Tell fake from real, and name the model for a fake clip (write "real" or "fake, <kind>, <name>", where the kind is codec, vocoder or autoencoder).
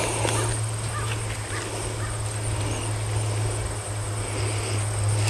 real